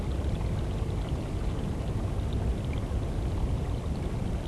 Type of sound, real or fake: real